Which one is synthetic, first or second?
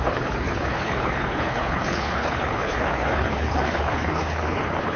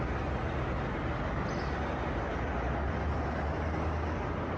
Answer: first